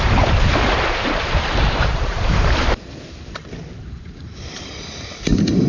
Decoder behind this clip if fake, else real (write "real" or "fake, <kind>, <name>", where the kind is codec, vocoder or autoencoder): fake, vocoder, BigVGAN v2